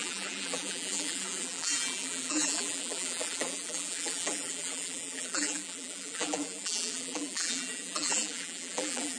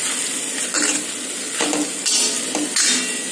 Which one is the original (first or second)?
second